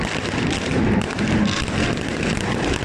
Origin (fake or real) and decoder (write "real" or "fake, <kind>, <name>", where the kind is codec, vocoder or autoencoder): fake, vocoder, BigVGAN v2